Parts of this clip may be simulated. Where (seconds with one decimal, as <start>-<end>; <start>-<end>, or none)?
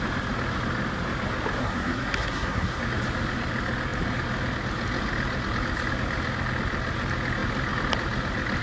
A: 1.6-2.8